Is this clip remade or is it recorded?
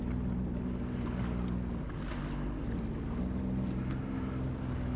recorded